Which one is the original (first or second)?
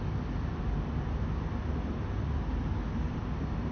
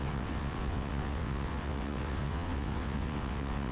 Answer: first